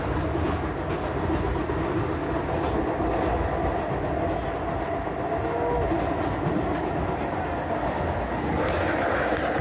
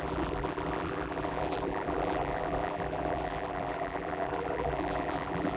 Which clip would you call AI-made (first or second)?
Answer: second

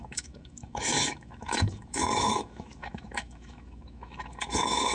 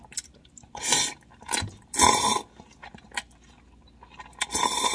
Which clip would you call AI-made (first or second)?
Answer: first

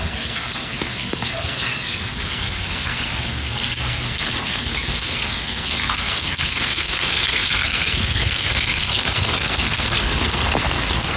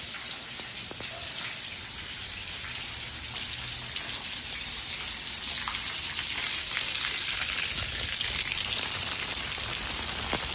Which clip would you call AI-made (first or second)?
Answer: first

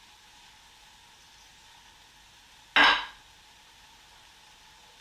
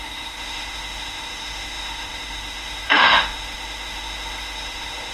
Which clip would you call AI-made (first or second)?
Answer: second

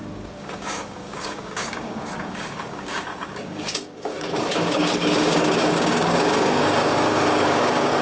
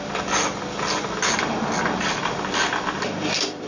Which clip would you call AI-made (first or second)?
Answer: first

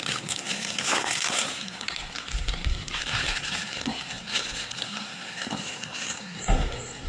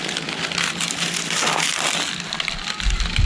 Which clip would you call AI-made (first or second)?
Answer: first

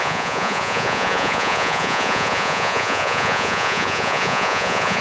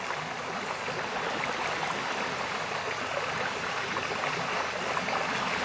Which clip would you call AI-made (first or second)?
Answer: first